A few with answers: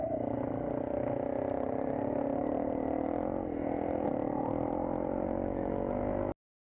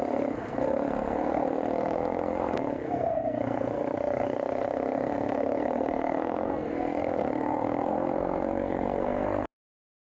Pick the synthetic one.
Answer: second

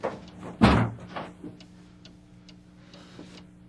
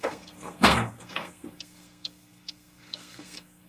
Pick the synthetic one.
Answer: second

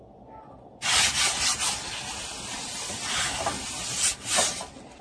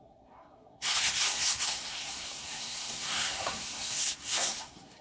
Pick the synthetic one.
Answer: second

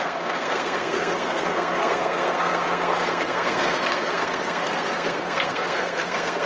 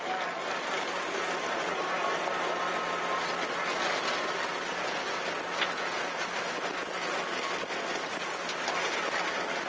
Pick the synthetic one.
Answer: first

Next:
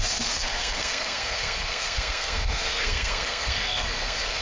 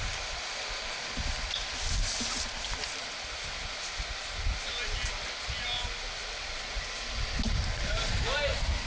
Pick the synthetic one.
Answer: first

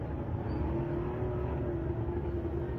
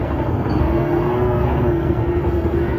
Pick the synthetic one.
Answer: second